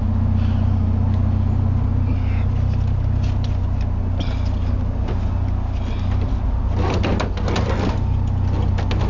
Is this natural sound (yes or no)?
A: yes